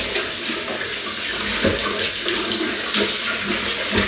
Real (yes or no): yes